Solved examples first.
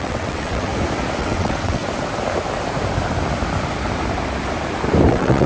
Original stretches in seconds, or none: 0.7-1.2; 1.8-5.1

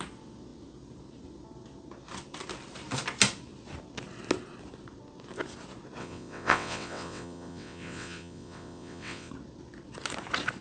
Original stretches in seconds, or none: 0.0-6.0; 9.3-10.6

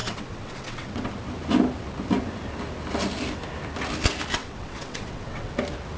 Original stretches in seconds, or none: 1.1-4.4; 5.5-6.0

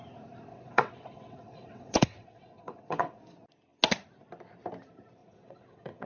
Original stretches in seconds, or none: 0.0-0.5; 3.2-5.2

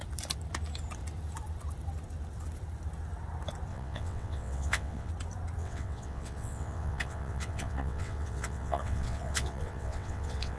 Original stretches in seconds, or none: 0.0-3.7; 5.1-5.6

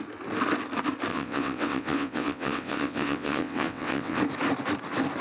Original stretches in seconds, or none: 0.0-1.1; 4.2-5.2

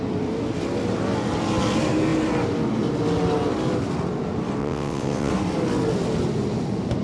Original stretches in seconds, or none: 0.0-4.6; 5.3-7.0

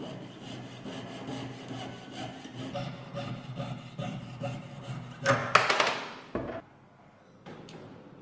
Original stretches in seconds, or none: 0.0-8.2